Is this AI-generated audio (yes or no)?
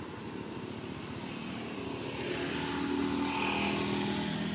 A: no